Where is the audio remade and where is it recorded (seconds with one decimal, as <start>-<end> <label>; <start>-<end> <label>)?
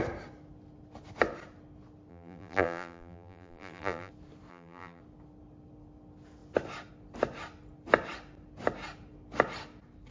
0.0-2.1 recorded; 2.1-4.1 remade; 4.1-4.5 recorded; 4.5-5.0 remade; 5.0-10.1 recorded